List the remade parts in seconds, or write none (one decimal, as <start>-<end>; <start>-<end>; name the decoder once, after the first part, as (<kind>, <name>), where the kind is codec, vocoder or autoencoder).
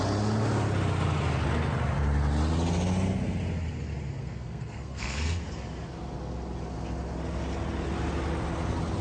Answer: 4.2-5.4 (codec, SNAC)